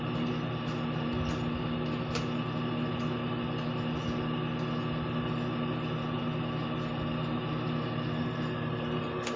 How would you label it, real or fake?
real